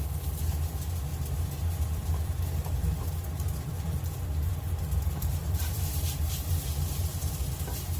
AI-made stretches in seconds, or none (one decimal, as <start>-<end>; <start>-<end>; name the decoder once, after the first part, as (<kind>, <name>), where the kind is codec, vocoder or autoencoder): 1.1-3.7 (vocoder, BigVGAN v2); 4.5-7.3